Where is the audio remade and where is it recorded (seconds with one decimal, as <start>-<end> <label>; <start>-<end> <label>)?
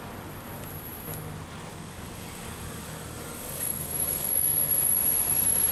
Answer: 0.0-1.7 recorded; 1.7-4.7 remade; 4.7-5.7 recorded